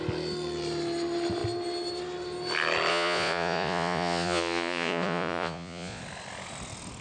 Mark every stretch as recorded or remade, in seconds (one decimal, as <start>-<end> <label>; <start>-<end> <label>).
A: 0.0-2.9 recorded; 2.9-6.0 remade; 6.0-7.0 recorded